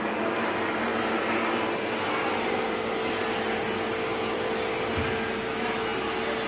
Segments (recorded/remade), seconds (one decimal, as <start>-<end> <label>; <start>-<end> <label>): 0.0-6.5 recorded